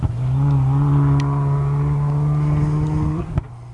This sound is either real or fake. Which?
real